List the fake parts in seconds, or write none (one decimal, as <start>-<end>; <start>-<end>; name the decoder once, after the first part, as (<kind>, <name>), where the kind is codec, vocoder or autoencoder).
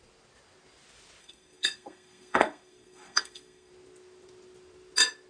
1.2-3.7 (codec, SNAC)